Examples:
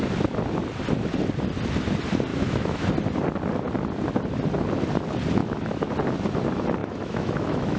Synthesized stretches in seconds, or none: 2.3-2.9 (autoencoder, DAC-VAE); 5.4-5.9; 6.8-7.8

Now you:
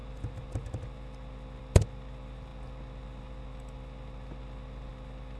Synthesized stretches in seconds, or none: none

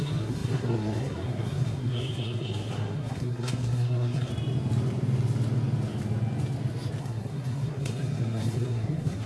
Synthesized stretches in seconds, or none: 0.0-4.3 (codec, SNAC); 7.0-9.3

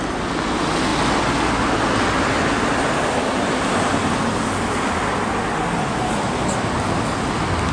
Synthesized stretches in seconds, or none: none

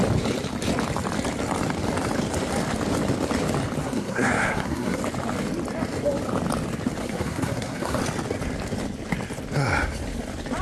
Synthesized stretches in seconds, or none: 3.8-5.0 (codec, SNAC); 7.0-8.0

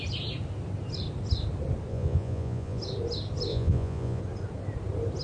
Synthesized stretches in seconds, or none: 1.9-2.8 (vocoder, Vocos); 3.5-4.2